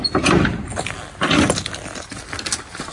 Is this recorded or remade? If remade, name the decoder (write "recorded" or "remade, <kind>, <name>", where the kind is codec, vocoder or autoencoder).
recorded